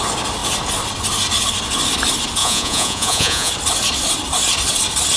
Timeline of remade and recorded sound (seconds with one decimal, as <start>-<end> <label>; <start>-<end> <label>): 0.0-2.4 recorded; 2.4-3.5 remade; 3.5-5.2 recorded